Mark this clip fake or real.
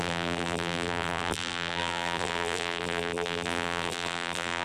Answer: fake